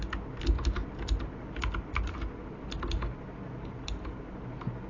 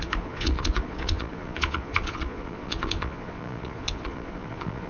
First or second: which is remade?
second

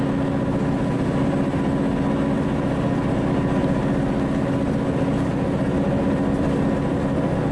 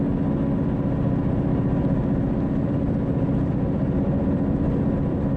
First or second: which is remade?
second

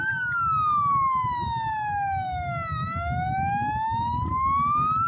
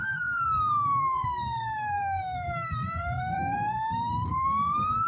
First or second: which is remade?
second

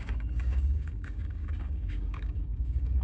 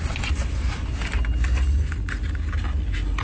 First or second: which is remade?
first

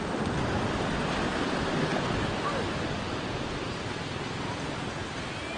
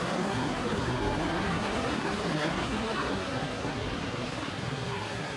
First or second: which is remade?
second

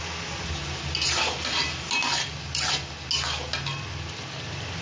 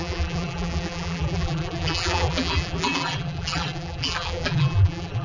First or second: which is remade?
second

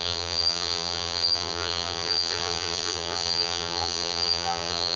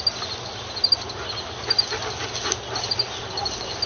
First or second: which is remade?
first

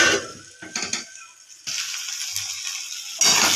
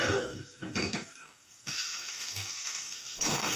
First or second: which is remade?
second